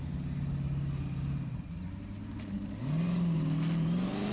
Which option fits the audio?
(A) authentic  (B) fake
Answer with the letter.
A